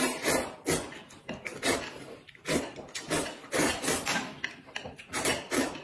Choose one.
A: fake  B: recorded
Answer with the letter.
A